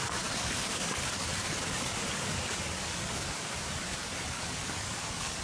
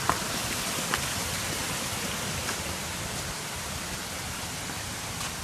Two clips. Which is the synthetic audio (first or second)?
first